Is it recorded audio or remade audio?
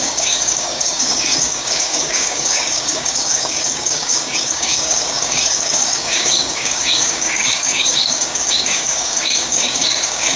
remade